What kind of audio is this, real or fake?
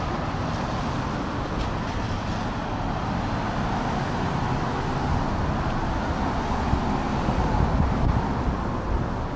real